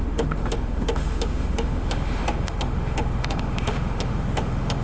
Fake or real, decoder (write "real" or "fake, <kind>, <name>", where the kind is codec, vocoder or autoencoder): fake, autoencoder, DAC-VAE